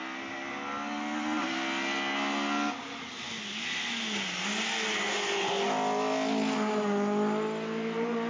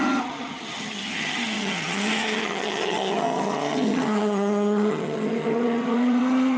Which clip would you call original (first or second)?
first